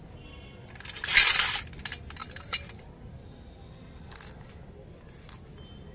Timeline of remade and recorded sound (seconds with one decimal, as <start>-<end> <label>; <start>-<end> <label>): 0.0-5.9 recorded